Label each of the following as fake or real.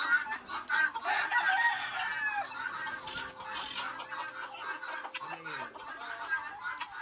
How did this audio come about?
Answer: real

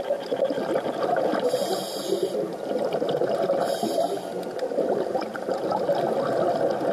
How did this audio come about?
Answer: real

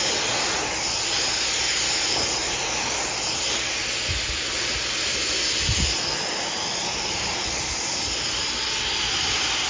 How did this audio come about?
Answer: real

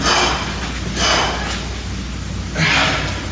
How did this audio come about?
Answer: real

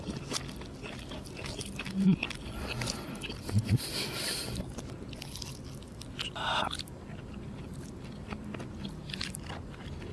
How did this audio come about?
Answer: real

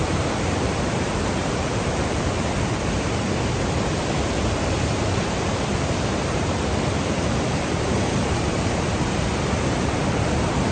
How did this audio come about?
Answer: fake